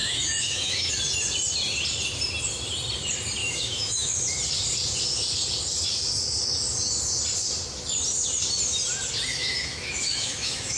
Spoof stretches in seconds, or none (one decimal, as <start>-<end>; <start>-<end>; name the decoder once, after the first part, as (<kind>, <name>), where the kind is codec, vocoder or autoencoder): 0.0-0.9 (autoencoder, DAC-VAE); 3.4-4.2; 9.3-10.8